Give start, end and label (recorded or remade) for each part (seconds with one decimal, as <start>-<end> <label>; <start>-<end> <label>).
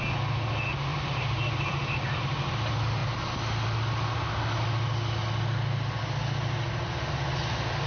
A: 0.0-0.9 recorded; 0.9-2.2 remade; 2.2-7.9 recorded